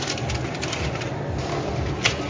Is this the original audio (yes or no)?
yes